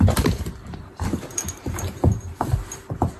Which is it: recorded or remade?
remade